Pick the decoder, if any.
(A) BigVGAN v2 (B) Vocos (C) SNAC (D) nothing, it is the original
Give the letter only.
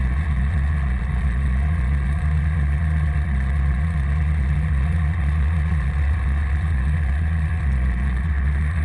B